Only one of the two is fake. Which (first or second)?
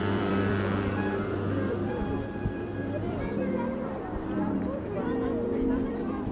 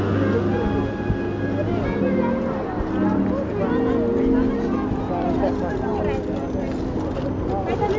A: first